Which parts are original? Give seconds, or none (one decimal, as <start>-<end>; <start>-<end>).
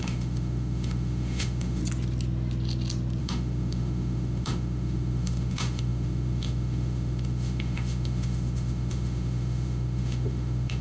1.8-3.2